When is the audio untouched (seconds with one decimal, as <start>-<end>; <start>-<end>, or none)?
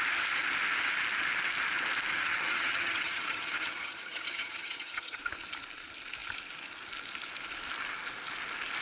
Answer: 0.0-2.1; 5.2-8.8